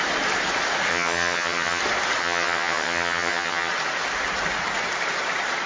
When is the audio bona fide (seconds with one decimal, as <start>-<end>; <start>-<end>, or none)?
0.0-0.9; 1.8-2.2; 3.7-5.7